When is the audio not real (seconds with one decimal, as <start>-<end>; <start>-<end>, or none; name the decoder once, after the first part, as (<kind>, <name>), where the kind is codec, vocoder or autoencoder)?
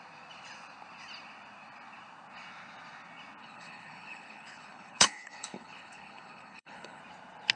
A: 3.4-7.0 (codec, HILCodec)